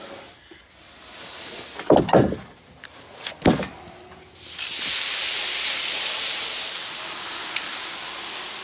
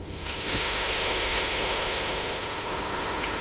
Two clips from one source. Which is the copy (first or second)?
second